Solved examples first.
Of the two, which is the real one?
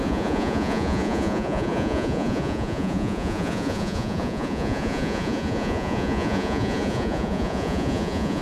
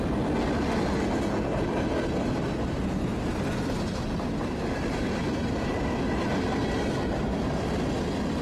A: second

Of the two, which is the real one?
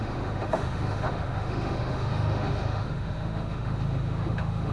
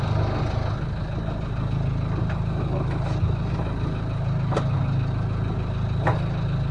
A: second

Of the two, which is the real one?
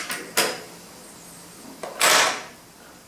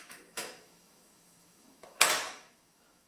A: first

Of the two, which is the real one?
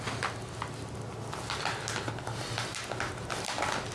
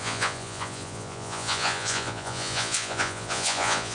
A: first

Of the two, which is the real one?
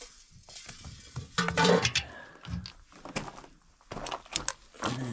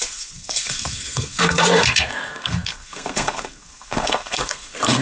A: first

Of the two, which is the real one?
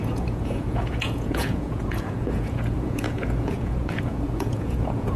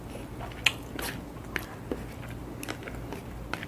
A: second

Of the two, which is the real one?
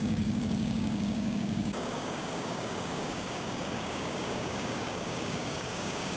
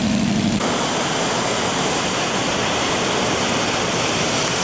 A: second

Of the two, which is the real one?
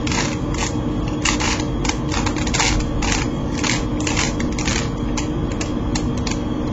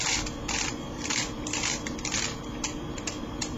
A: first